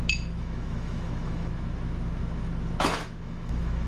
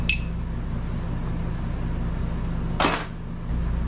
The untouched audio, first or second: second